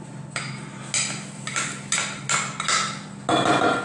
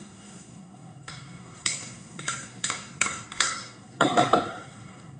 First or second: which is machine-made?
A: second